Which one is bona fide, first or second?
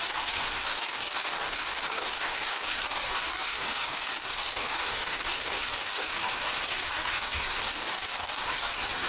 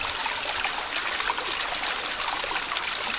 second